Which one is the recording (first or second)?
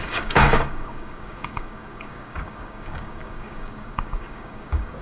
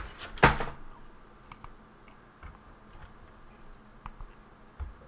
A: second